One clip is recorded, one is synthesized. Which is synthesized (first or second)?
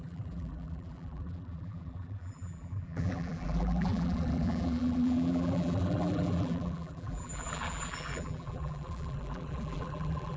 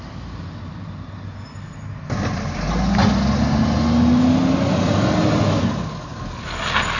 first